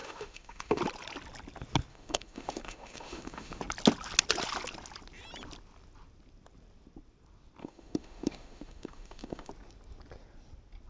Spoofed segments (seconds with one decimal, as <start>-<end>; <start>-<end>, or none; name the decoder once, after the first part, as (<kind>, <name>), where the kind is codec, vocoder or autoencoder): 0.0-0.8 (autoencoder, DAC-VAE); 1.9-3.6; 7.6-9.5